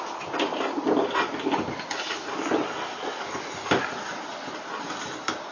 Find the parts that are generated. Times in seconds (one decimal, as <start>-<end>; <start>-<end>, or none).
none

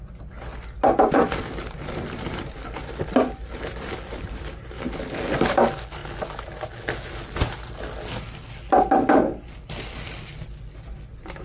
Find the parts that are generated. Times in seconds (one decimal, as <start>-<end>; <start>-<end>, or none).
none

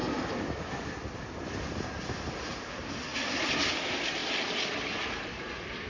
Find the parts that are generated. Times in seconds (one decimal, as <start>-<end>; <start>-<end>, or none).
none

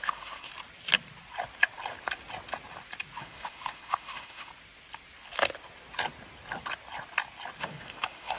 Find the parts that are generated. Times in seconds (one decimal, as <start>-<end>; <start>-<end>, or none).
0.0-0.5; 3.2-4.5; 7.6-8.4

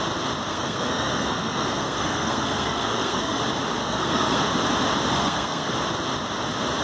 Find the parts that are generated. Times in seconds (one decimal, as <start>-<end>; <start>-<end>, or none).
0.5-3.4; 3.8-4.4; 5.1-5.7

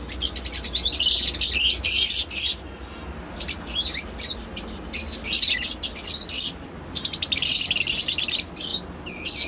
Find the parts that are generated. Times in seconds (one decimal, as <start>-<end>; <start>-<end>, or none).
none

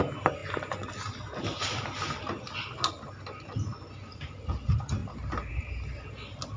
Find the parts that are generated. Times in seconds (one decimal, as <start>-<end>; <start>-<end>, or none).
none

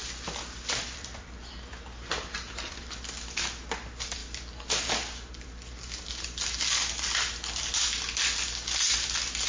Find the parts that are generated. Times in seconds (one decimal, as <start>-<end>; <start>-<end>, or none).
0.0-3.4